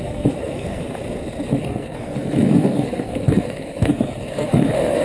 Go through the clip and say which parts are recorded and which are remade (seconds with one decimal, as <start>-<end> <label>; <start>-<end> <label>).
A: 0.0-0.8 remade; 0.8-1.5 recorded; 1.5-5.0 remade